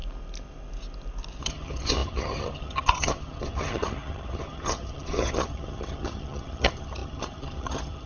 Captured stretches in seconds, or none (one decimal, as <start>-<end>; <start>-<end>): 0.0-1.4